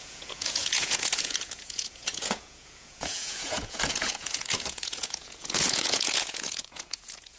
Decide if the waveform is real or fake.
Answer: fake